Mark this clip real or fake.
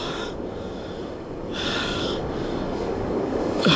fake